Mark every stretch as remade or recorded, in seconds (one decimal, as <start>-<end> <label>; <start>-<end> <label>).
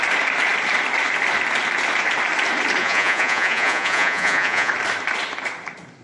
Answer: 0.0-2.8 recorded; 2.8-4.7 remade; 4.7-6.0 recorded